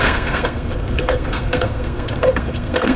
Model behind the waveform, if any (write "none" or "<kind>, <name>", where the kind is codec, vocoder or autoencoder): codec, SNAC